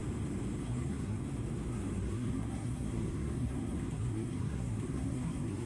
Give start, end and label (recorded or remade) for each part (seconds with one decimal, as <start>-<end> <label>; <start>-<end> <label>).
0.0-0.6 recorded; 0.6-1.2 remade; 1.2-1.7 recorded; 1.7-5.7 remade